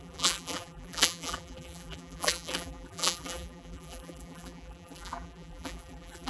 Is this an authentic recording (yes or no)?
no